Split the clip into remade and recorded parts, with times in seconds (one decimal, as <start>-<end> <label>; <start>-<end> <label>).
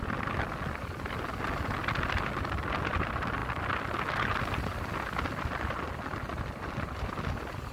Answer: 0.0-7.7 recorded